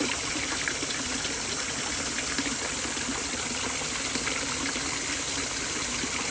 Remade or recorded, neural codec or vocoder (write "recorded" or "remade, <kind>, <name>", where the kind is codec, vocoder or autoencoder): recorded